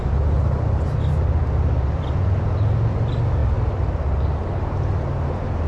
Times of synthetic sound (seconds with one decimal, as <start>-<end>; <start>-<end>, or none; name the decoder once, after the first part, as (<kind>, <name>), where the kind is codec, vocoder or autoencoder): none